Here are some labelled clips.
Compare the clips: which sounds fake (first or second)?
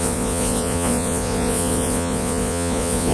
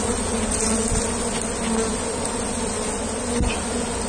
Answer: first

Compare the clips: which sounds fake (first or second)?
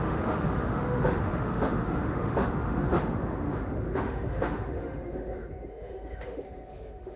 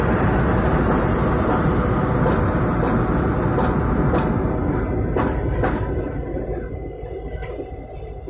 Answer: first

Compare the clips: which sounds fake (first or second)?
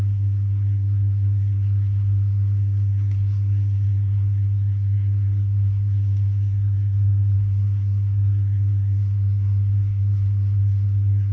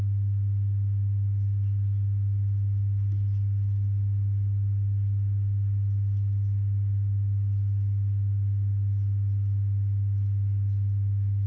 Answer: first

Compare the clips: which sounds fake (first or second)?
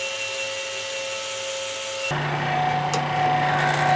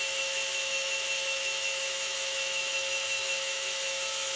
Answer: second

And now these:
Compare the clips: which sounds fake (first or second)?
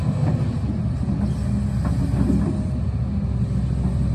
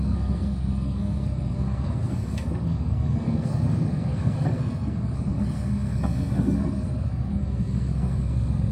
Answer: second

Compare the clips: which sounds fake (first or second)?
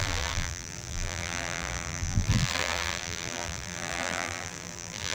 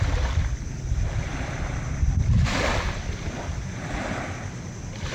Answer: first